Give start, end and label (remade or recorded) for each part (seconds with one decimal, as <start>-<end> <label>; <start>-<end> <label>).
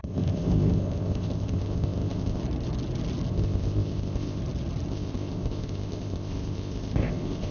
0.0-2.4 remade; 2.4-3.3 recorded; 3.3-4.4 remade; 4.4-4.9 recorded; 4.9-7.5 remade